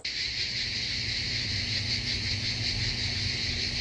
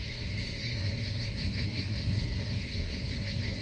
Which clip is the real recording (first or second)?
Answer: first